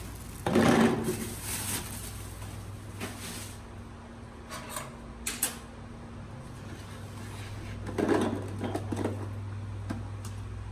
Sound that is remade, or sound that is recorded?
recorded